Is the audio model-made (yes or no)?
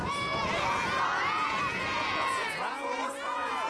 yes